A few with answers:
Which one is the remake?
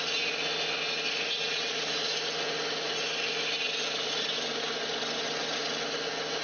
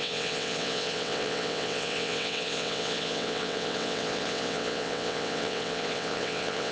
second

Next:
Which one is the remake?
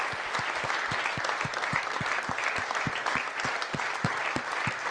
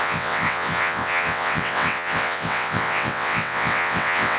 second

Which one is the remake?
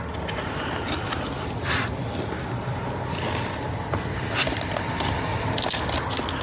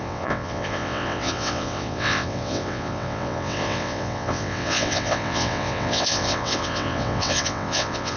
second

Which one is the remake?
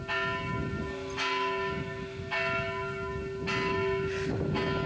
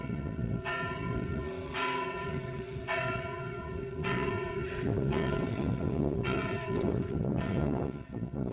second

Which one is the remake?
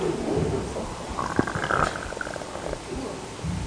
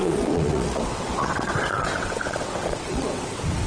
second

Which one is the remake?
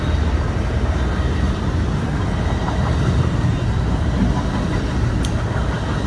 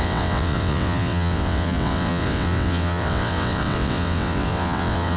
second